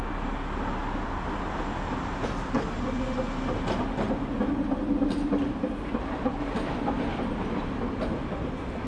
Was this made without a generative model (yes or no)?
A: yes